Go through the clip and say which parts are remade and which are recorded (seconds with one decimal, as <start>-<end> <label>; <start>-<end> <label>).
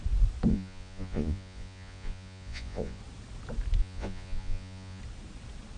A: 0.0-0.5 recorded; 0.5-3.0 remade; 3.0-3.8 recorded; 3.8-5.0 remade; 5.0-5.8 recorded